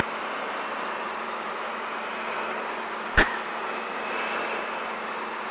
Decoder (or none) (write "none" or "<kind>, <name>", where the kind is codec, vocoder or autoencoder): none